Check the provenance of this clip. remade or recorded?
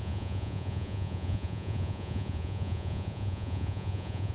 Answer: remade